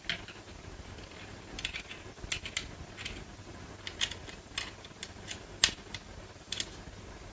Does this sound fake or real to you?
real